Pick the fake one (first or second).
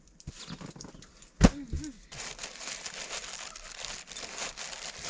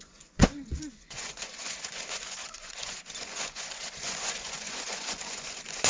second